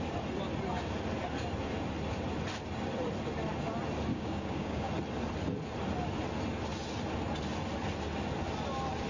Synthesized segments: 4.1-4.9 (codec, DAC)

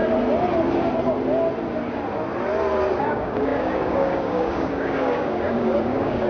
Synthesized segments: 3.0-6.3 (codec, DAC)